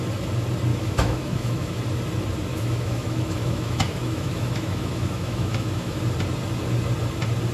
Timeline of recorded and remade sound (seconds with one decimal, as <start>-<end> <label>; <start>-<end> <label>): 0.0-0.7 recorded; 0.7-1.8 remade; 1.8-2.5 recorded; 2.5-6.0 remade; 6.0-7.5 recorded